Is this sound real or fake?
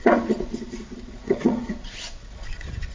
fake